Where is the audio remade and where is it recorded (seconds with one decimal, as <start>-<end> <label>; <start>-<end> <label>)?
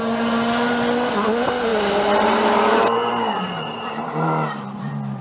0.0-1.7 recorded; 1.7-4.8 remade; 4.8-5.2 recorded